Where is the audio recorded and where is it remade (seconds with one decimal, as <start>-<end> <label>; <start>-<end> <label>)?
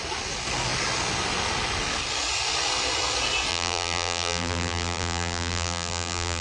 0.0-3.5 recorded; 3.5-6.4 remade